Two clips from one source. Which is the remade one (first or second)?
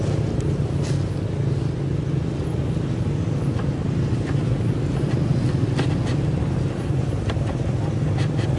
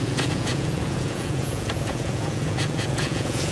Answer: second